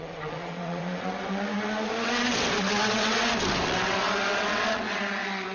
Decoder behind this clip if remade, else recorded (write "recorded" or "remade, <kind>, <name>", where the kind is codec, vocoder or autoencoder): remade, vocoder, WaveNeXt